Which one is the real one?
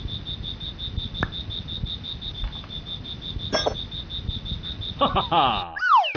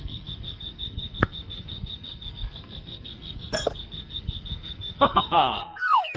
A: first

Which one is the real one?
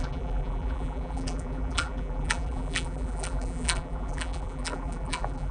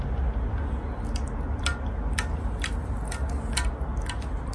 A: second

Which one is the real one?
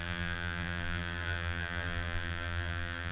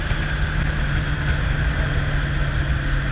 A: second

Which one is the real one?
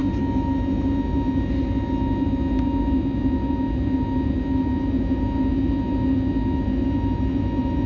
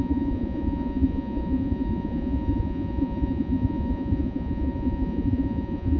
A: first